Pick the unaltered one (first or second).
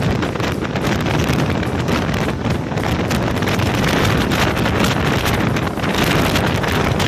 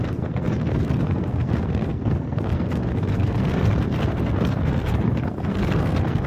first